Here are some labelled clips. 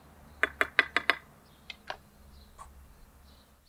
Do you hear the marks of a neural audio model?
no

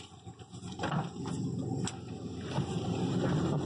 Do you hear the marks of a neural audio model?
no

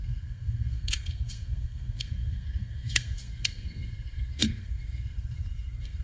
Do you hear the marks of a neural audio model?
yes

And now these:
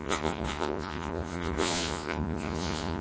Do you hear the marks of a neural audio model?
yes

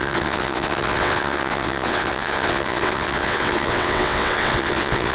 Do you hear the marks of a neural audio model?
yes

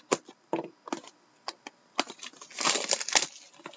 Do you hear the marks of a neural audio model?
no